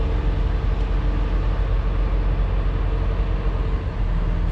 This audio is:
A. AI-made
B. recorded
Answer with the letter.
B